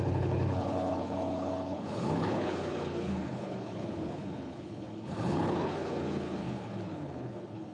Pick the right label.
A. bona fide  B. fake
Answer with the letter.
B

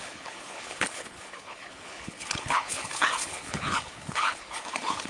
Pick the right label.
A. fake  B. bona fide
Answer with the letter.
A